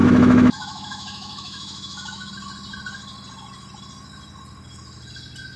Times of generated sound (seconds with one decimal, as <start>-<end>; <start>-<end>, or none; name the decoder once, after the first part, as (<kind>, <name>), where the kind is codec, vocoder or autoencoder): 0.0-2.3 (autoencoder, DAC-VAE)